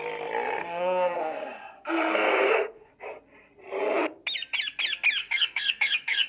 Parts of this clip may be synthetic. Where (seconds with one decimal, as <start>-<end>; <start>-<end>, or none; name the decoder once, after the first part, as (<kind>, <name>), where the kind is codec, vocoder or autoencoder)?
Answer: 0.6-2.9 (codec, SNAC); 5.2-6.3